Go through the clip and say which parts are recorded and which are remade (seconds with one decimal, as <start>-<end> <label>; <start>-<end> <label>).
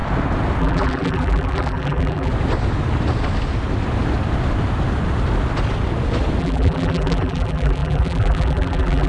0.0-0.6 recorded; 0.6-2.3 remade; 2.3-6.4 recorded; 6.4-9.1 remade